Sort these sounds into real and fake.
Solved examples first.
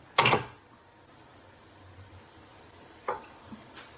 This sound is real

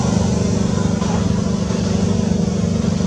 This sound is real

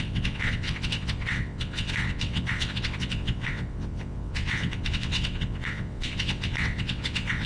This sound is fake